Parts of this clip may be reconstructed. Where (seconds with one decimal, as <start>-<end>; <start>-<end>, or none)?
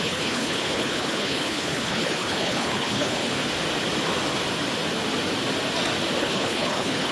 0.0-3.4; 6.2-7.1